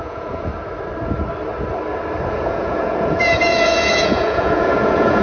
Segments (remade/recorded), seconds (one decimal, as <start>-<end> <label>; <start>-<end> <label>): 0.0-0.5 remade; 0.5-2.3 recorded; 2.3-5.2 remade